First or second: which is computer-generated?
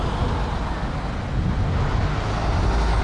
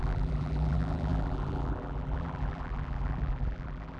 second